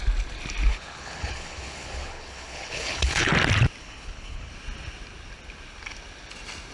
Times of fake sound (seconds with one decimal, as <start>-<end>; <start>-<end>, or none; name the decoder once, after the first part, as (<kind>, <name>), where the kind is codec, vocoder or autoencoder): 0.7-3.3 (codec, HILCodec); 3.8-4.5